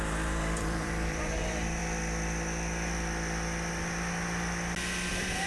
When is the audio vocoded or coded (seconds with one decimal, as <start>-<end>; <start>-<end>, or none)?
0.0-1.8; 5.1-5.5